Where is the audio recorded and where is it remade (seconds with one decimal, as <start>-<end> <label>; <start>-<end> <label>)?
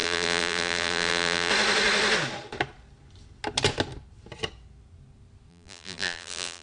0.0-1.5 remade; 1.5-5.5 recorded; 5.5-6.6 remade